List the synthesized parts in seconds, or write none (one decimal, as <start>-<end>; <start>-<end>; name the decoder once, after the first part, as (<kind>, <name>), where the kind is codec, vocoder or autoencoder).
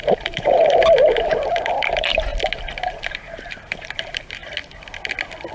0.0-0.6 (vocoder, BigVGAN v2); 1.5-2.3; 2.9-4.4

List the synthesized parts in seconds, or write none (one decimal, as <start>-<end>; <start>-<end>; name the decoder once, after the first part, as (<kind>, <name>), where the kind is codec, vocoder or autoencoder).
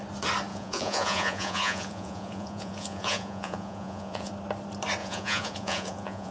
0.5-4.3 (vocoder, Vocos); 5.0-6.3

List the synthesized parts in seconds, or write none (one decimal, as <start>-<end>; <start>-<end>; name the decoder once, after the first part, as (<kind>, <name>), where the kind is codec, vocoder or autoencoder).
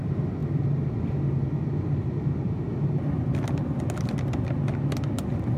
0.4-3.8 (vocoder, BigVGAN v2)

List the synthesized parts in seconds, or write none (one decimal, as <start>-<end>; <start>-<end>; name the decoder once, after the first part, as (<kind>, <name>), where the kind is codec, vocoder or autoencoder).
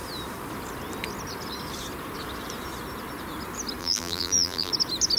3.8-4.7 (vocoder, BigVGAN v2)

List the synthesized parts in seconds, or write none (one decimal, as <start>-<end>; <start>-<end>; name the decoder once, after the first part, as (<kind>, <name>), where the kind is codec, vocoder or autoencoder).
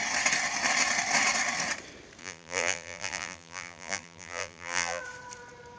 2.2-5.0 (vocoder, BigVGAN v2)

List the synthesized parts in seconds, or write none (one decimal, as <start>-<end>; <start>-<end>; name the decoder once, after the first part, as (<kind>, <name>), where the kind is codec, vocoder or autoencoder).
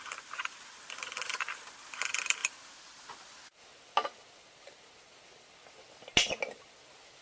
none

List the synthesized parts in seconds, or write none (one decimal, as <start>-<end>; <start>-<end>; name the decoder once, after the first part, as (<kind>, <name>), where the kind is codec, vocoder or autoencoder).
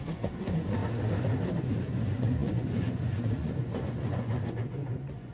0.0-0.8 (vocoder, Vocos); 1.6-5.3